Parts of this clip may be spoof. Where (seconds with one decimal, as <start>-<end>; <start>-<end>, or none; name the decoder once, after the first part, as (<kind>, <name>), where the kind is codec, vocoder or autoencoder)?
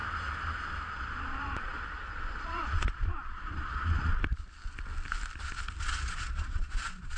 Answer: 0.9-4.1 (vocoder, Vocos); 5.8-7.2